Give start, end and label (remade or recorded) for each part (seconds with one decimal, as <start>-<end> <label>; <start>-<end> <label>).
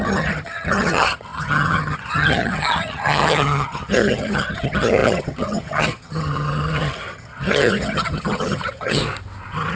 0.0-9.0 remade; 9.0-9.8 recorded